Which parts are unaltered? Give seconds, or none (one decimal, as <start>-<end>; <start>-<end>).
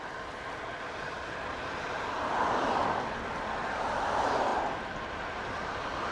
0.0-6.1